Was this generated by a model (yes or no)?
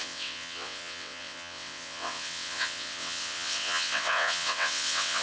yes